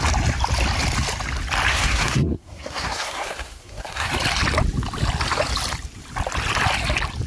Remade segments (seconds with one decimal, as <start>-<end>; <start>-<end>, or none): 1.7-4.1